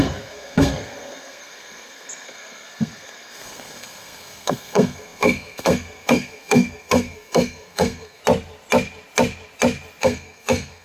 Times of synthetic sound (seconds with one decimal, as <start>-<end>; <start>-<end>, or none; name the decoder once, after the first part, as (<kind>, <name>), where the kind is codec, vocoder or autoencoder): 0.0-8.2 (codec, SNAC); 10.0-10.8